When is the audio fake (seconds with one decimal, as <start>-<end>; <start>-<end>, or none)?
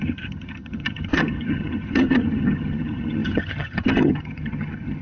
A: 0.0-5.0